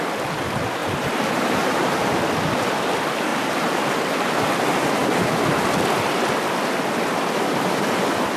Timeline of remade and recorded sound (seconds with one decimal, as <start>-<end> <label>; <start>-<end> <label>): 0.0-0.8 recorded; 0.8-2.2 remade; 2.2-3.3 recorded; 3.3-4.3 remade; 4.3-8.4 recorded